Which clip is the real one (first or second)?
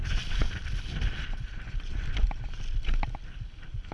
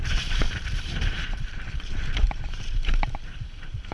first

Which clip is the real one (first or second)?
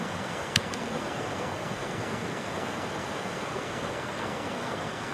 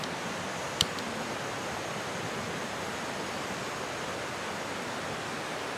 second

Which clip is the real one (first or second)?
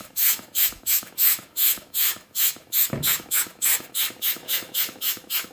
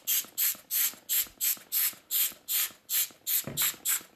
second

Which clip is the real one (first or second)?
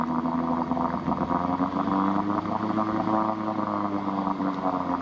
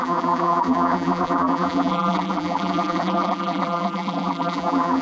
first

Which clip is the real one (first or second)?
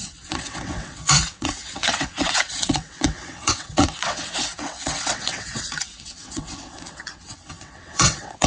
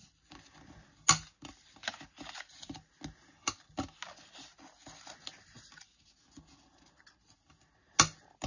second